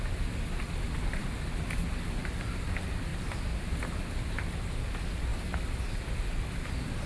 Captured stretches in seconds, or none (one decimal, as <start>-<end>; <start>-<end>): 0.0-7.1